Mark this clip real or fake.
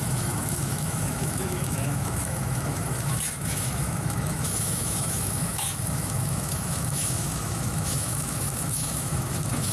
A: fake